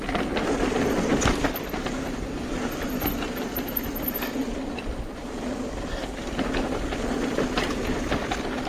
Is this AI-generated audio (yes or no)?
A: no